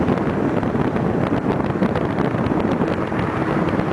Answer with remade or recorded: recorded